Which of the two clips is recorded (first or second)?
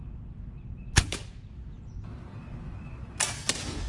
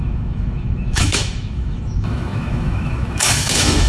first